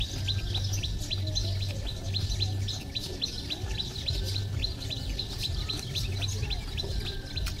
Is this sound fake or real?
real